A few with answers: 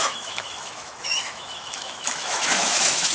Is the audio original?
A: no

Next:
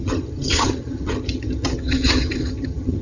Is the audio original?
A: no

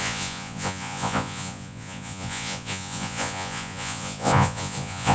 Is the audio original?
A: no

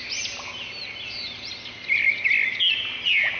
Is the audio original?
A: yes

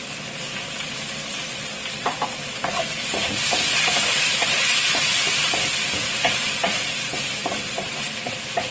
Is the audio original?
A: yes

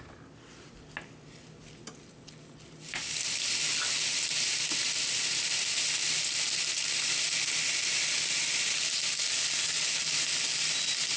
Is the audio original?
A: yes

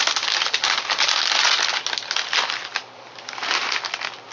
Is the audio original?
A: yes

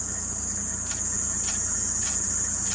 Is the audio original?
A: no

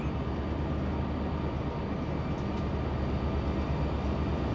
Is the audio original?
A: yes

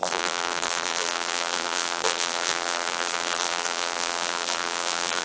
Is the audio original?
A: no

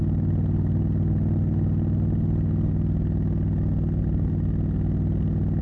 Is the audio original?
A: yes